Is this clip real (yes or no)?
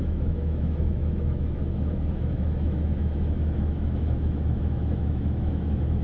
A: no